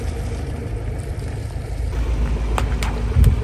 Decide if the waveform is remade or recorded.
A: recorded